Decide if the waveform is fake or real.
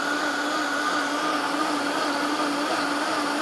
real